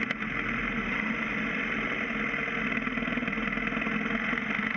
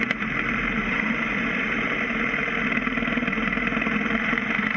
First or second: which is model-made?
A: second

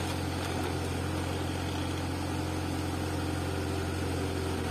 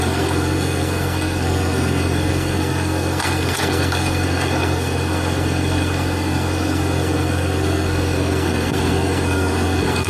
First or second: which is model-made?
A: second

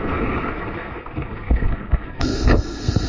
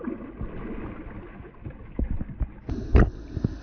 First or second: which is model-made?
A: first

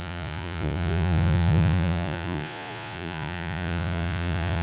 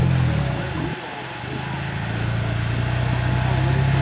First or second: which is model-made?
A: first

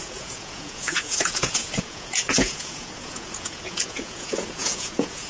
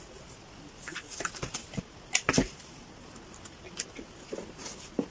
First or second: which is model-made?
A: first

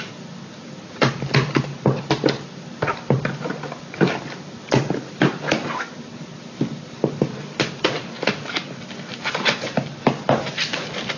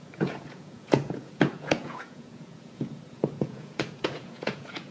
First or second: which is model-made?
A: second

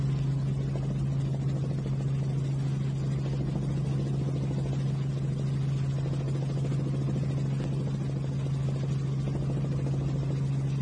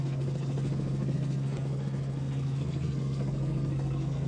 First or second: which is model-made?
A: second